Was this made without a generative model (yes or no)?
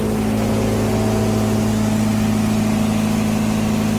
yes